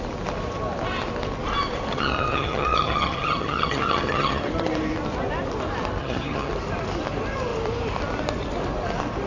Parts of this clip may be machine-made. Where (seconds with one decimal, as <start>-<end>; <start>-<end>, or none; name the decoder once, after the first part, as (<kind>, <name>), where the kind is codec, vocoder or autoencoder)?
1.9-4.4 (vocoder, HiFi-GAN); 6.0-6.5